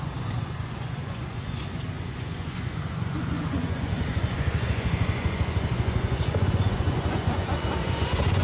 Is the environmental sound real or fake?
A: fake